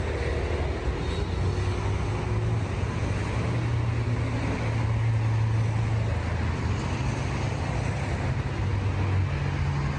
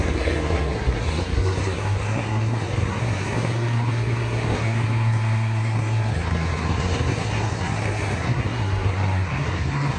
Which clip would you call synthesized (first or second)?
second